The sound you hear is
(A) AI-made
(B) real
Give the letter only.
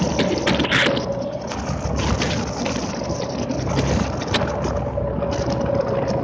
B